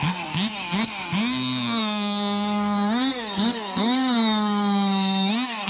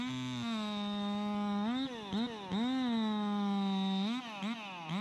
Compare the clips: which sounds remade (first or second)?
first